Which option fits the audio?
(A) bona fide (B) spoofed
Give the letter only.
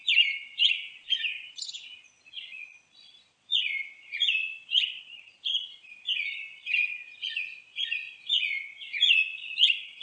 B